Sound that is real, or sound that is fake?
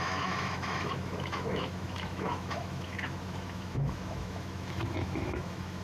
fake